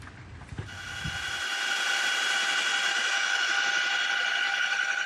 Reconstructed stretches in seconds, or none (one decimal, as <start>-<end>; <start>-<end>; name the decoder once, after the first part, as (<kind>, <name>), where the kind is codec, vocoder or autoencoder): 2.9-3.5 (autoencoder, DAC-VAE)